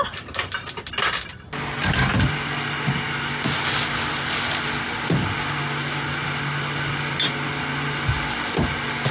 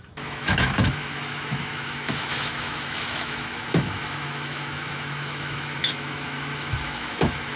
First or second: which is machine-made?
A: second